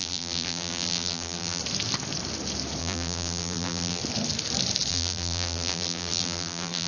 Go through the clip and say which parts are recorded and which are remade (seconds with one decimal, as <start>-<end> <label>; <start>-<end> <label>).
0.0-1.6 remade; 1.6-2.8 recorded; 2.8-4.0 remade; 4.0-4.9 recorded; 4.9-6.9 remade